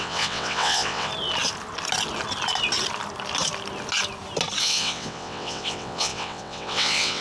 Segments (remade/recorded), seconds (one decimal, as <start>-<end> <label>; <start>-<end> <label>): 0.0-1.1 remade; 1.1-4.6 recorded; 4.6-7.2 remade